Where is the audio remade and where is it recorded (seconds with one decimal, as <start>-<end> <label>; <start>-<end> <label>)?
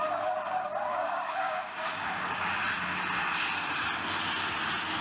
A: 0.0-0.9 recorded; 0.9-2.5 remade; 2.5-5.0 recorded